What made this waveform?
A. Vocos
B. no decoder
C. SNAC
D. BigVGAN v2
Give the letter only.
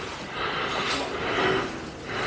B